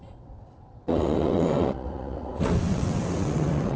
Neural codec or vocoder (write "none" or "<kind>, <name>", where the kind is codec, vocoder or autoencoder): vocoder, WaveNeXt